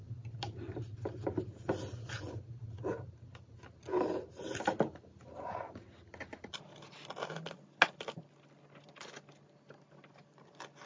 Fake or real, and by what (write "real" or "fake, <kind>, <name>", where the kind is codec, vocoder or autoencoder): real